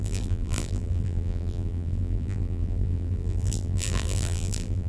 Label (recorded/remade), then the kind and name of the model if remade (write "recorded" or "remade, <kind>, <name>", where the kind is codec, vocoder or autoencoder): remade, vocoder, BigVGAN v2